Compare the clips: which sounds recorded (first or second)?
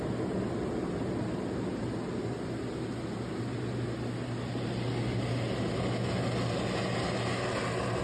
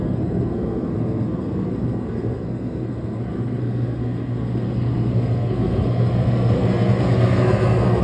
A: first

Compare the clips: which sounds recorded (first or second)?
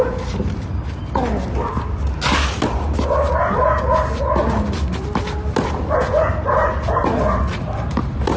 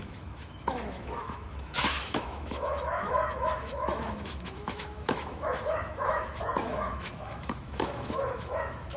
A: first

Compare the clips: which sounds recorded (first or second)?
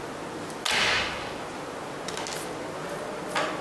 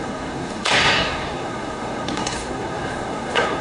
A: first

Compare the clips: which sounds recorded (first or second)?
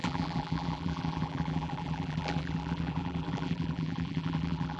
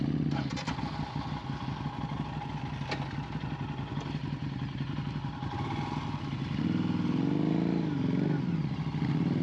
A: second